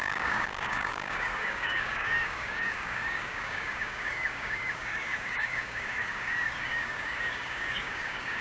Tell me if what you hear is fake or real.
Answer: fake